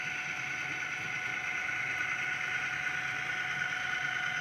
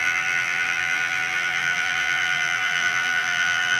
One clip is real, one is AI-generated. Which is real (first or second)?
first